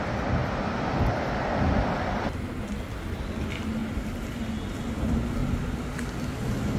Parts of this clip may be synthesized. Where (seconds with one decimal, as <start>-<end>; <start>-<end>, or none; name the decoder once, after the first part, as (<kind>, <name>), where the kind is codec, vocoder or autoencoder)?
none

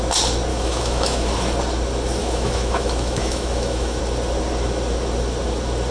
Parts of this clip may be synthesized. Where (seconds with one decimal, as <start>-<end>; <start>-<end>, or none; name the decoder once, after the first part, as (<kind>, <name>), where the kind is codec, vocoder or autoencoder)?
0.5-1.3 (autoencoder, DAC-VAE); 2.2-4.0

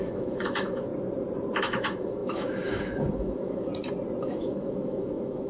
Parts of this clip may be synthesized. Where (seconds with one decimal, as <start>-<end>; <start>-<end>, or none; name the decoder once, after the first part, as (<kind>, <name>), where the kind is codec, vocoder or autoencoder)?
0.0-0.9 (autoencoder, DAC-VAE); 1.6-3.7; 4.2-5.5

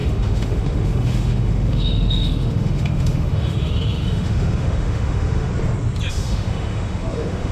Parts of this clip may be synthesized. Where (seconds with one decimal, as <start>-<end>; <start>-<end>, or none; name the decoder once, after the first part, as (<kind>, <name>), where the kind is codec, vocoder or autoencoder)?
0.0-5.5 (autoencoder, DAC-VAE); 6.1-7.5

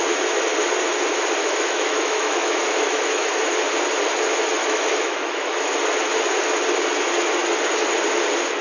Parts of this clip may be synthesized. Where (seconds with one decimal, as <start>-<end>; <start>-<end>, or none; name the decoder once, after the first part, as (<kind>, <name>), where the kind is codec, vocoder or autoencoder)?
1.4-3.3 (autoencoder, DAC-VAE); 4.6-5.7